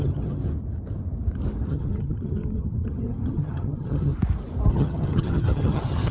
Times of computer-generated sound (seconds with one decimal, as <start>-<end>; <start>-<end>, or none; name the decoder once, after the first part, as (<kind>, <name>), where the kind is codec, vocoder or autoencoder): 0.0-0.4 (vocoder, HiFi-GAN); 1.7-4.1; 4.7-6.1